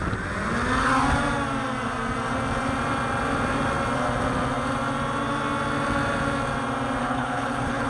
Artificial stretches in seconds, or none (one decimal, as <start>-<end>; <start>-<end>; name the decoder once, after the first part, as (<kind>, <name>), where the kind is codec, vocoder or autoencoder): 7.0-7.9 (codec, HILCodec)